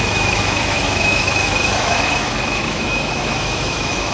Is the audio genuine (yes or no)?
no